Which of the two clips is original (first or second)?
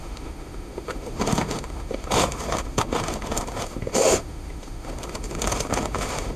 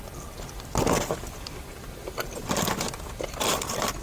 second